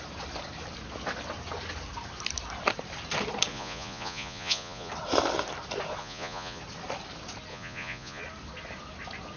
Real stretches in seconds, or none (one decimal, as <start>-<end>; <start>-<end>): 0.0-3.5; 4.9-6.0; 6.6-7.5; 8.2-9.4